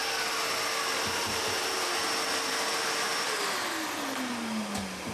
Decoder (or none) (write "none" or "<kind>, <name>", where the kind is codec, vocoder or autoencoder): none